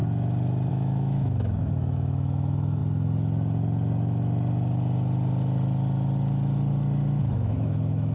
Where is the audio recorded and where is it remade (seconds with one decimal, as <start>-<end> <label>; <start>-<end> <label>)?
0.0-0.7 recorded; 0.7-2.8 remade; 2.8-7.2 recorded; 7.2-8.1 remade